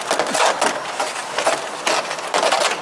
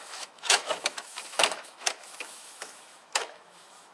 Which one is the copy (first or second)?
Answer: second